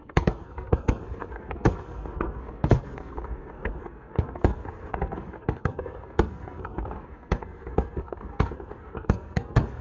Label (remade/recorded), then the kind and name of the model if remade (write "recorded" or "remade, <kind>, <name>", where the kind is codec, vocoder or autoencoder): remade, codec, SNAC